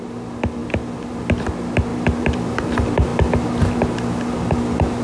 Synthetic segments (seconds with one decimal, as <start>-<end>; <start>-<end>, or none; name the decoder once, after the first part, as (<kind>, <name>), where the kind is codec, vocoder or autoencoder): 1.9-2.6 (vocoder, BigVGAN v2)